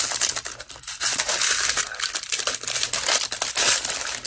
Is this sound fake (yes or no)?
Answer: no